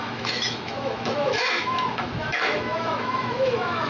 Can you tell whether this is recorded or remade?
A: remade